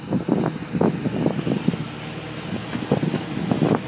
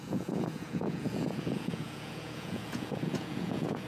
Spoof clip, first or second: second